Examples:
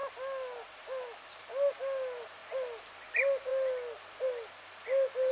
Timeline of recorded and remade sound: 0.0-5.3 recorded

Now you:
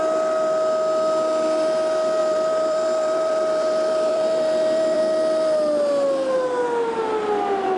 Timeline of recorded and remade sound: 0.0-2.2 recorded; 2.2-5.0 remade; 5.0-7.8 recorded

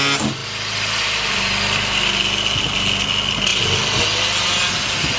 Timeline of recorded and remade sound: 0.0-5.2 recorded

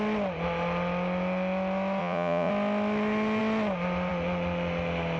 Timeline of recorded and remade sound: 0.0-2.0 recorded; 2.0-2.5 remade; 2.5-5.2 recorded

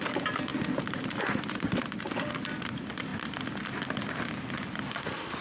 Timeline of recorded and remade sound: 0.0-5.4 recorded

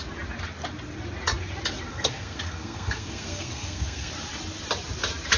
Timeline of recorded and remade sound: 0.0-1.9 recorded; 1.9-4.1 remade; 4.1-5.4 recorded